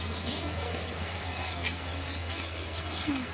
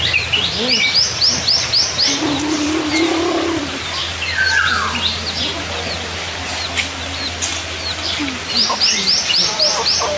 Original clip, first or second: second